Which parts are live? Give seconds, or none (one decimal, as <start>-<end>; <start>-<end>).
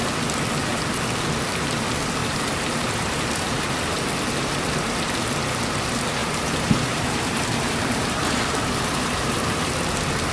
0.0-2.2; 3.6-6.2; 9.2-10.3